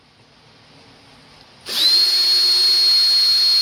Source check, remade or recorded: recorded